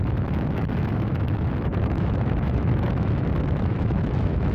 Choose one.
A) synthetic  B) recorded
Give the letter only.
A